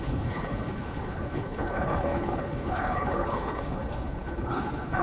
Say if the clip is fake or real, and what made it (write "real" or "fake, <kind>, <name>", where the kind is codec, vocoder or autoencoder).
fake, codec, HILCodec